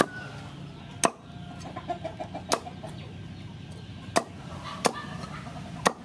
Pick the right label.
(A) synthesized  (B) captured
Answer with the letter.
B